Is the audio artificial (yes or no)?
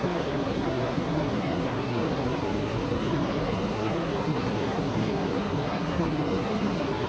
yes